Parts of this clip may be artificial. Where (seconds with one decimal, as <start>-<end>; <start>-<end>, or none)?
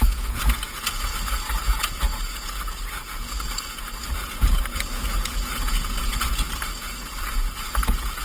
0.0-8.2